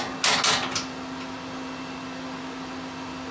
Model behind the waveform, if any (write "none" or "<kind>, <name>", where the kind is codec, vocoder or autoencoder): none